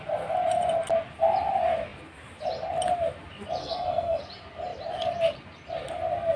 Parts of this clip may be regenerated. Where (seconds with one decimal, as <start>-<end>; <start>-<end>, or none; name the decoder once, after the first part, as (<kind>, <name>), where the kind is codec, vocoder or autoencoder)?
3.6-4.2 (codec, SNAC)